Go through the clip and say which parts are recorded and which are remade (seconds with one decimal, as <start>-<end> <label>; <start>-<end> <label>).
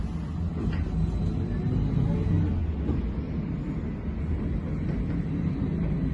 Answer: 0.0-6.1 recorded